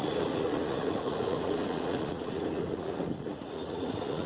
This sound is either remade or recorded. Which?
remade